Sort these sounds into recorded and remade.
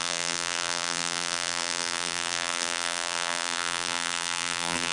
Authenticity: remade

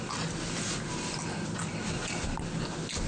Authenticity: recorded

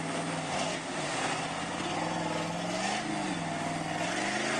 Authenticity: recorded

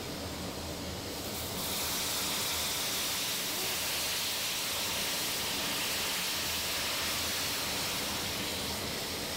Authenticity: recorded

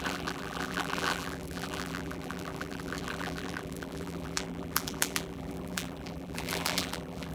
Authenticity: remade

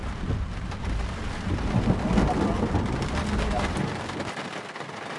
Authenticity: recorded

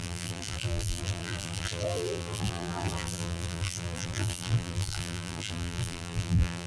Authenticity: remade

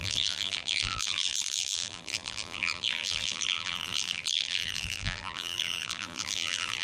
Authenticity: remade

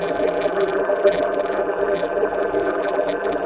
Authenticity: remade